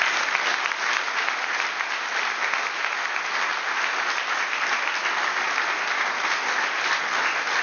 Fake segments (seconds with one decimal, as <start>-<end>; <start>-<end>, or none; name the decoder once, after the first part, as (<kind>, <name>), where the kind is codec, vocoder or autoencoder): none